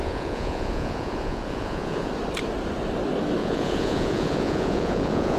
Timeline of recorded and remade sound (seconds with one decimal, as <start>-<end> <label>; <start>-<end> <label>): 0.0-2.1 remade; 2.1-3.4 recorded; 3.4-5.4 remade